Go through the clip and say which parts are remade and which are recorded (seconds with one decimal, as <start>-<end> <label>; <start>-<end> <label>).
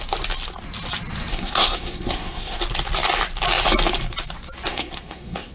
0.0-1.3 recorded; 1.3-2.6 remade; 2.6-4.7 recorded; 4.7-5.5 remade